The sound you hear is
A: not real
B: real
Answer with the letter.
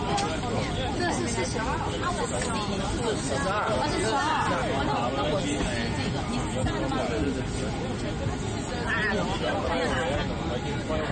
B